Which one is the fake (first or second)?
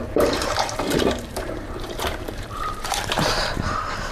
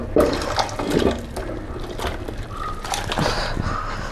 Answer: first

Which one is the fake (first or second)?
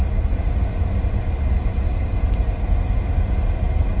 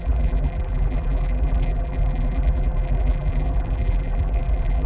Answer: second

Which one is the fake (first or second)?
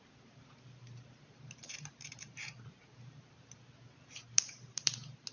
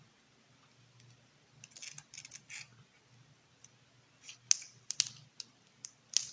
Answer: first